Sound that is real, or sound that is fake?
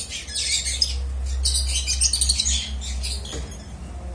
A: real